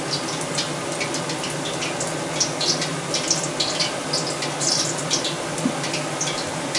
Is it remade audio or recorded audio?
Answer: recorded